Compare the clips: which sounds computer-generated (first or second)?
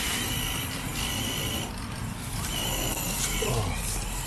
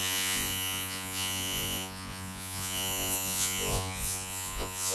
second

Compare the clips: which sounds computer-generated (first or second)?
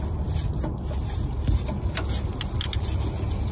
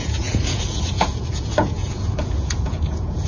second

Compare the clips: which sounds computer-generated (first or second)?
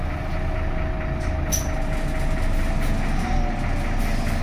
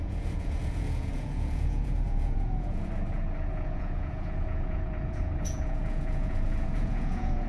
second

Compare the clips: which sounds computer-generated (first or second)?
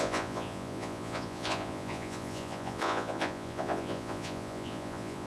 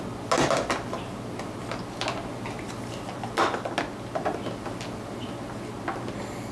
first